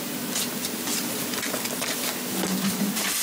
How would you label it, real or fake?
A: real